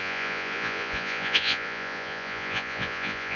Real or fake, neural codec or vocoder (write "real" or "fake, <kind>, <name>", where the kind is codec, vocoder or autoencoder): fake, vocoder, Vocos